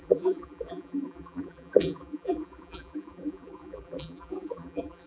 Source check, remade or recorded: remade